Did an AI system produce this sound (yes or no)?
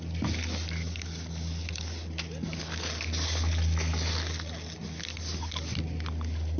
no